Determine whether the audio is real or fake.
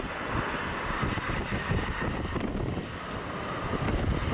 fake